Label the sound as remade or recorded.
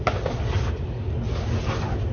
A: recorded